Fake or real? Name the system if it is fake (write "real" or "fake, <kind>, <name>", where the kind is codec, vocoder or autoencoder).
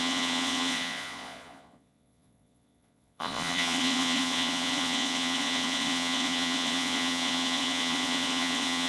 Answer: fake, vocoder, Vocos